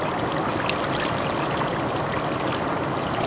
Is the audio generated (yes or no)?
no